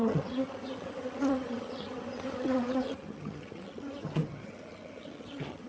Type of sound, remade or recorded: remade